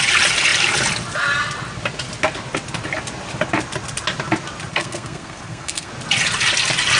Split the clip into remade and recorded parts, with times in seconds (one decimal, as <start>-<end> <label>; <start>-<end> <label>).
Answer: 0.0-4.7 recorded; 4.7-5.9 remade; 5.9-7.0 recorded